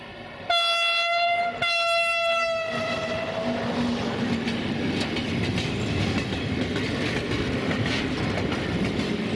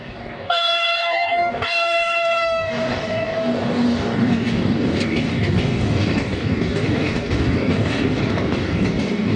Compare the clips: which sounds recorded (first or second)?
first